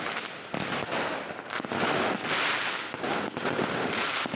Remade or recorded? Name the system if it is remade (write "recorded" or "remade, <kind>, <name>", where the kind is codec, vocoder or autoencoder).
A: recorded